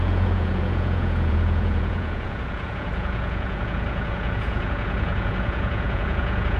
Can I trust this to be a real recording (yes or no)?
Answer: no